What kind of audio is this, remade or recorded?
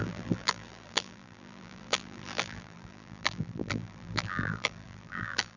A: remade